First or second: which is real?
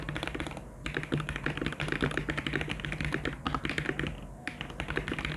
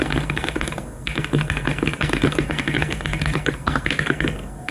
first